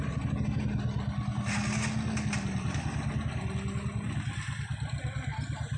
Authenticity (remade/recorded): recorded